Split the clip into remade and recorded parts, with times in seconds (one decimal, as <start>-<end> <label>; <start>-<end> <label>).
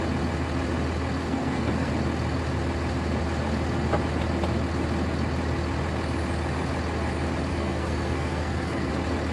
0.0-1.2 recorded; 1.2-1.9 remade; 1.9-7.5 recorded; 7.5-8.9 remade; 8.9-9.3 recorded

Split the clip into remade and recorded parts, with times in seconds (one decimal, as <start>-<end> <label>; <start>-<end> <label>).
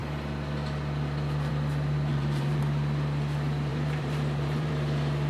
0.0-2.1 recorded; 2.1-2.6 remade; 2.6-3.7 recorded; 3.7-4.7 remade; 4.7-5.3 recorded